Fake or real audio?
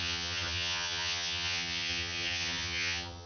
fake